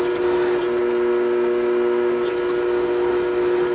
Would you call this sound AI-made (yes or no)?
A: no